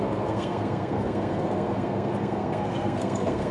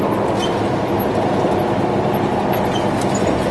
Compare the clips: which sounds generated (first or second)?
first